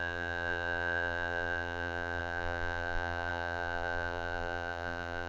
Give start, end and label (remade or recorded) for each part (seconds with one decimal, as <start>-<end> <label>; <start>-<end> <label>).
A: 0.0-5.3 remade